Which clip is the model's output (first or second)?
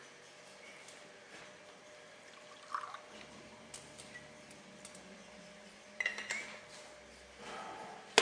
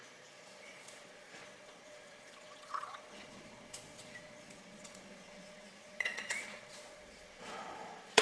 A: second